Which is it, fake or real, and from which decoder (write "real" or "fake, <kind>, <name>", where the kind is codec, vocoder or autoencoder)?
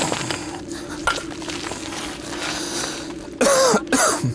real